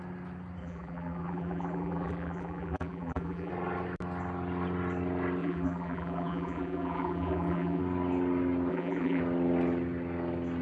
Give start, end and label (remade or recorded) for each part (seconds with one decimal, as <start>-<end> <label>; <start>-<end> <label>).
0.0-0.6 recorded; 0.6-3.5 remade; 3.5-5.4 recorded; 5.4-7.8 remade; 7.8-8.7 recorded; 8.7-9.2 remade; 9.2-10.6 recorded